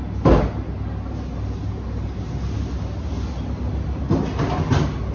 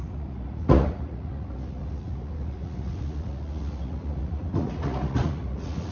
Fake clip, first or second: second